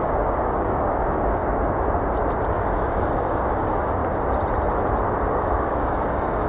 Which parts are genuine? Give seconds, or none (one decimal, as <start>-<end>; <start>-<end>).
1.4-2.5; 4.0-5.3